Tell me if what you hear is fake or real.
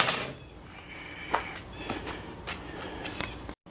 real